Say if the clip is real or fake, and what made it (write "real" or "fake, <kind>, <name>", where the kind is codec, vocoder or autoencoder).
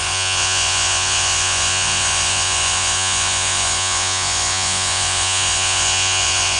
fake, vocoder, Vocos